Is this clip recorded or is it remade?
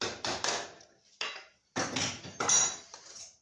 recorded